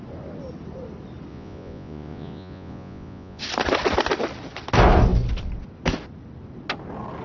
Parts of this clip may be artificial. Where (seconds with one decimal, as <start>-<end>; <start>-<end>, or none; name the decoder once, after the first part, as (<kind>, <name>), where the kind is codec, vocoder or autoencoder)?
1.3-3.4 (vocoder, Vocos)